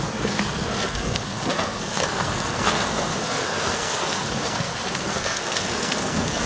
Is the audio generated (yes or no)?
yes